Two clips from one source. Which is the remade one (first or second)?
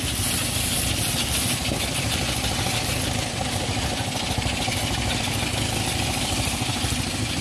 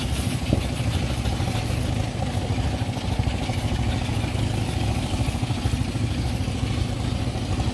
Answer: first